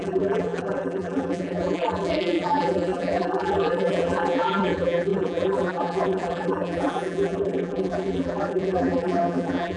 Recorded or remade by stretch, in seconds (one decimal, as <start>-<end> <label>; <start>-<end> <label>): 0.0-9.8 remade